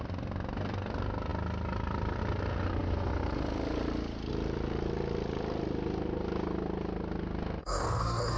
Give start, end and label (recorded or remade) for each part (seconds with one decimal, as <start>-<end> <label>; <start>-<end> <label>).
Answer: 0.0-7.6 recorded; 7.6-8.4 remade